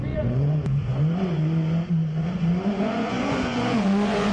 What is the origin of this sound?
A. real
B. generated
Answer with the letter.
B